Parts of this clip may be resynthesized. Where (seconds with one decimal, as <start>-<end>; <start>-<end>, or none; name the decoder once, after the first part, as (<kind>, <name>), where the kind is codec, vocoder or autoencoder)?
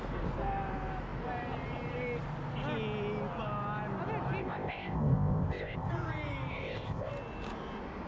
4.4-5.9 (codec, ZipCodec); 6.5-7.1